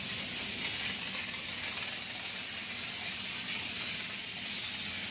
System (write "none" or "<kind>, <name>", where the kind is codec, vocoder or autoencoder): none